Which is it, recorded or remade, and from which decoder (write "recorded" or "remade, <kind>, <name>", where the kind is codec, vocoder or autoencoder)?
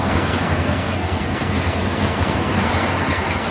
remade, codec, SNAC